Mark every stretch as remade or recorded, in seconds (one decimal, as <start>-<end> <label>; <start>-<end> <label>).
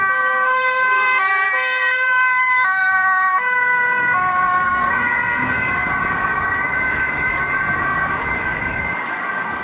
0.0-9.6 remade